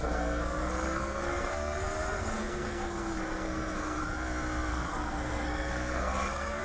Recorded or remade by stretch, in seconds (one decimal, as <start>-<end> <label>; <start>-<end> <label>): 0.0-4.0 remade; 4.0-4.7 recorded; 4.7-6.6 remade